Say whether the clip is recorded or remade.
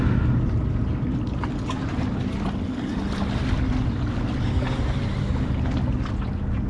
recorded